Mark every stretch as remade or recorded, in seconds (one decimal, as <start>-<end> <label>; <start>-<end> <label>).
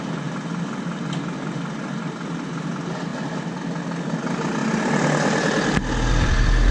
0.0-6.7 recorded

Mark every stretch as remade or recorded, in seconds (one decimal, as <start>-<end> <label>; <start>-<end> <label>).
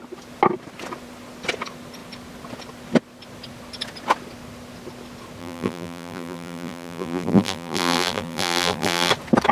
0.0-5.4 recorded; 5.4-9.1 remade; 9.1-9.5 recorded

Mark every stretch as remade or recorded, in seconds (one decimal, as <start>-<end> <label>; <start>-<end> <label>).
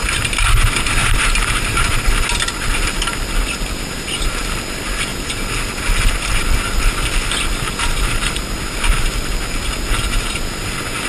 0.0-11.1 recorded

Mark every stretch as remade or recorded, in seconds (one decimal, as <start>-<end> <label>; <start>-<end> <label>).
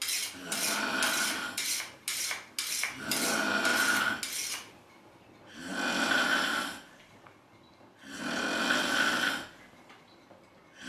0.0-10.9 recorded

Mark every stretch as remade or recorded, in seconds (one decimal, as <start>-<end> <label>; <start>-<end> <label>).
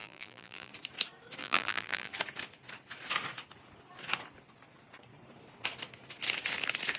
0.0-0.7 remade; 0.7-1.4 recorded; 1.4-2.1 remade; 2.1-7.0 recorded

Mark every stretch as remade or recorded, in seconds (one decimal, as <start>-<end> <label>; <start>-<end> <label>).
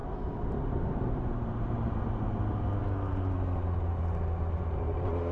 0.0-2.0 remade; 2.0-5.3 recorded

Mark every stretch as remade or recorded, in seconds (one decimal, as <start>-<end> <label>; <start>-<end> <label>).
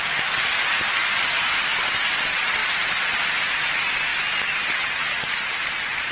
0.0-6.1 recorded